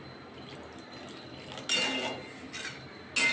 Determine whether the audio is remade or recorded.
recorded